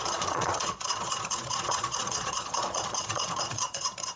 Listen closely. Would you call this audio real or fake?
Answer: fake